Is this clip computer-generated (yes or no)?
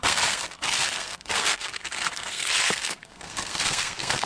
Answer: yes